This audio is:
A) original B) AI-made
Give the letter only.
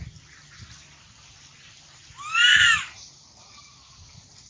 A